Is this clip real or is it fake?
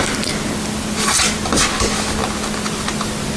real